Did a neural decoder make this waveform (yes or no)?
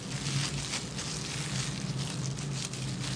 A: no